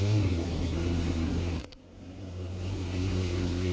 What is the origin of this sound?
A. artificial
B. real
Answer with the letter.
A